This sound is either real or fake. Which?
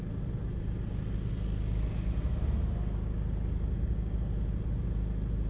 real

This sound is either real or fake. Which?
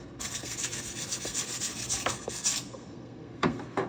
fake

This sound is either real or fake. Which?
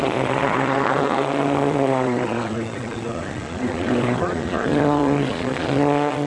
fake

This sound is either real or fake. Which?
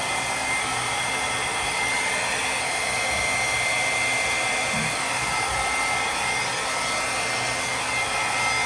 real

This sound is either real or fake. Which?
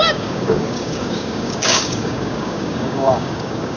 fake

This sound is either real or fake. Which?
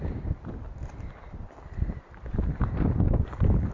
fake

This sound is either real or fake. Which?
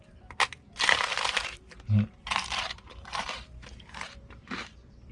fake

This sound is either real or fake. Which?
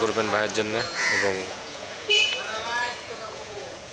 fake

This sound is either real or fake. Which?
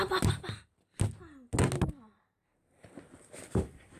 real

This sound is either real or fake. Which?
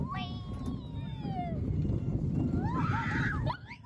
real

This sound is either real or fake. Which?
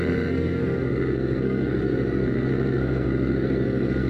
fake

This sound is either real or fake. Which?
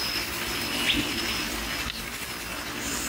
real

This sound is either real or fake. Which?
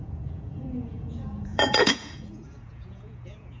fake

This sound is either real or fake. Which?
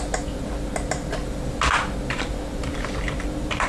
real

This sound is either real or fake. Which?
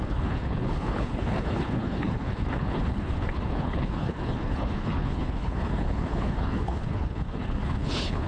fake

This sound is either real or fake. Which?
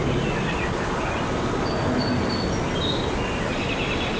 real